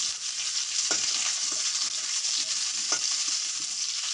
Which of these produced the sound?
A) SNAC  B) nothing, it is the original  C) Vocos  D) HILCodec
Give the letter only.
B